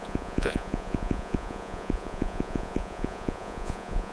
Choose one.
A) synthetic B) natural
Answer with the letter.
A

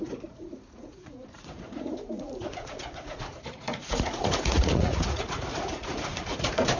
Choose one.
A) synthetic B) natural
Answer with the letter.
A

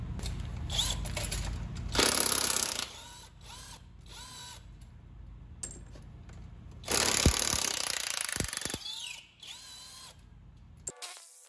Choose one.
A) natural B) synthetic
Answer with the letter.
A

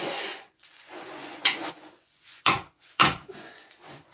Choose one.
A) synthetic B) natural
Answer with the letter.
A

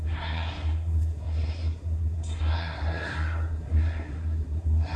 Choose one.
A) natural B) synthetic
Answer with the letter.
B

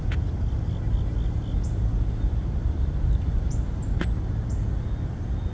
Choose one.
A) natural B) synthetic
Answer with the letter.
A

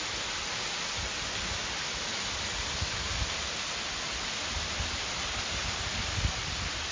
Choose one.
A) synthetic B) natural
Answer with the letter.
B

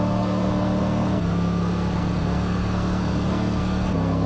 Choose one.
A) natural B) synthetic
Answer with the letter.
B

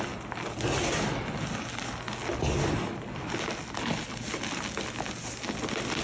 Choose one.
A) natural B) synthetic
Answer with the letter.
A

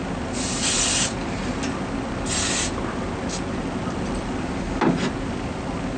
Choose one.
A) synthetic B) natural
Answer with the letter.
B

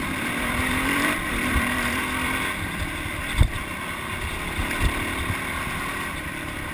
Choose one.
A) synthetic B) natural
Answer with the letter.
A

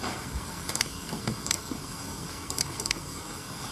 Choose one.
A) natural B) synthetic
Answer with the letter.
B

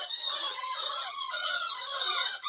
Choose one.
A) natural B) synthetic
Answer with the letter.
B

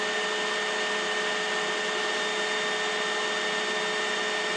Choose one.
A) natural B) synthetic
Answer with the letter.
A